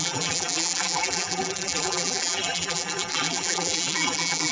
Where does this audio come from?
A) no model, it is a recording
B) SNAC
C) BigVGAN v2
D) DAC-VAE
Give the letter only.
C